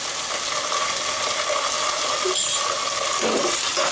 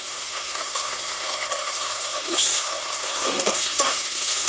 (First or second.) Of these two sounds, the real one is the first